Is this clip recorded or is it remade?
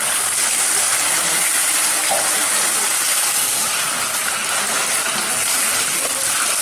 recorded